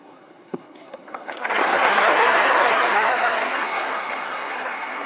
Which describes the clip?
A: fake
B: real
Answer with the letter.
A